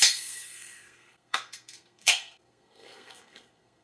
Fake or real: fake